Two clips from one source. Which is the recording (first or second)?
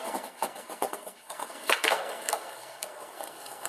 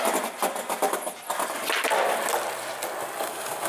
second